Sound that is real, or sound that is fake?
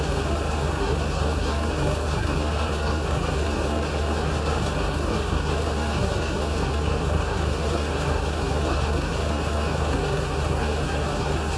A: fake